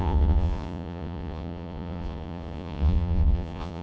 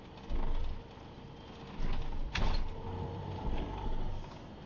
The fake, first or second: first